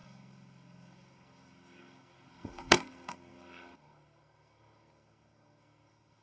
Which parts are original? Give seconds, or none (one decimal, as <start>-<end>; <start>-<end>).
none